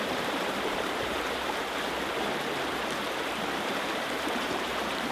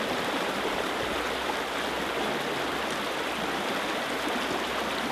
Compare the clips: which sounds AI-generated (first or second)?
first